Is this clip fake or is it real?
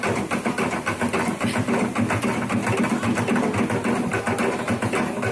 real